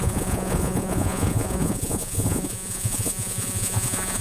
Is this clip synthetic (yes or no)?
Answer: yes